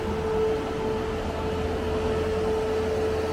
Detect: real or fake real